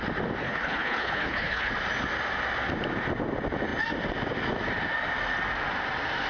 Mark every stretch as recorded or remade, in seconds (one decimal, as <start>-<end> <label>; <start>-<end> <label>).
0.0-0.4 recorded; 0.4-1.7 remade; 1.7-6.3 recorded